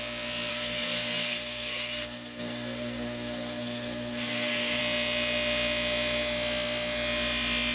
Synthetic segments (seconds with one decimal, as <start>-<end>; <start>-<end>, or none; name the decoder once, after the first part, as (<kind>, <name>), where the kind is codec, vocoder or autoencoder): 0.5-4.8 (codec, SNAC)

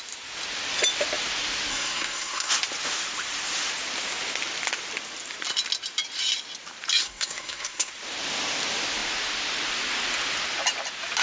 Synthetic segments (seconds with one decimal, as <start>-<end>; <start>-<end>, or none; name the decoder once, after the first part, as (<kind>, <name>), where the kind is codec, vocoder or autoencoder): 1.7-2.5 (codec, SNAC); 7.0-7.9

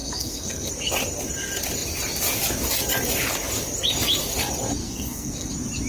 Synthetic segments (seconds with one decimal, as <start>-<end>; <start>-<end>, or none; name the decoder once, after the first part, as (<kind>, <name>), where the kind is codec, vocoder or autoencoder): 0.0-0.7 (codec, SNAC); 4.8-5.5

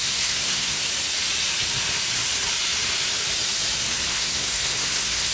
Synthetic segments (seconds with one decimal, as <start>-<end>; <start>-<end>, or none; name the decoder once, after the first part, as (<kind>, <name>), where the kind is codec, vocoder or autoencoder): 0.0-0.9 (codec, SNAC); 4.1-5.3